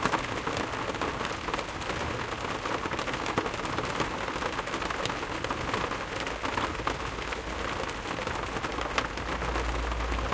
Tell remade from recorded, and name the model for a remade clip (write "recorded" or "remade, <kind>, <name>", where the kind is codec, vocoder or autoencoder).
recorded